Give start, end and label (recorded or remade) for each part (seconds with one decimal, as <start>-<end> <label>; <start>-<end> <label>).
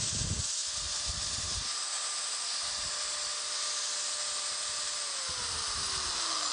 0.0-6.5 recorded